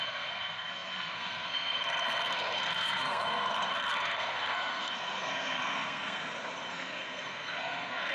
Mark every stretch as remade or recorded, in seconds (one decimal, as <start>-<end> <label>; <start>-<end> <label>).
0.0-6.2 remade; 6.2-6.7 recorded; 6.7-8.1 remade